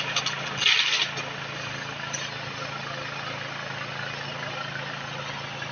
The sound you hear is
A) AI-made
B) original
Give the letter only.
B